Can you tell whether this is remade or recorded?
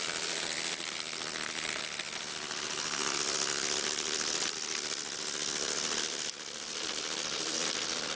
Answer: recorded